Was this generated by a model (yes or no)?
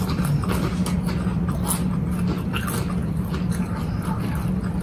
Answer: no